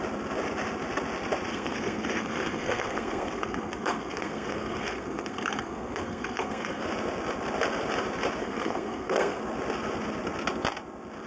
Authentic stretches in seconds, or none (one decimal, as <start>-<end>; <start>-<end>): 0.0-1.5; 6.8-8.4; 9.4-11.3